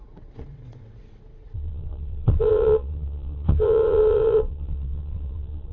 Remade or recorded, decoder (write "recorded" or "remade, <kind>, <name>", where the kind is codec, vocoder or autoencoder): remade, vocoder, WaveNeXt